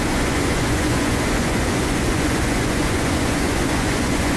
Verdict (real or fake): fake